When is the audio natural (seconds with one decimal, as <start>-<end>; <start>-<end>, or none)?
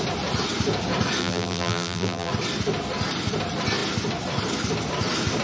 0.0-1.2; 2.3-5.4